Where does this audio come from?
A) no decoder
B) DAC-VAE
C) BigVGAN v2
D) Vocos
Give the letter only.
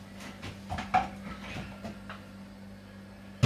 A